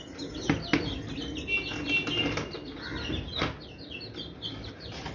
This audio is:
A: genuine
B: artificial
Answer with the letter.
A